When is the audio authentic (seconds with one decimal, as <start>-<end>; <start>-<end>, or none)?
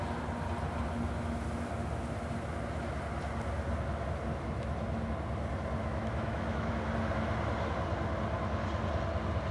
0.0-5.8; 6.7-9.5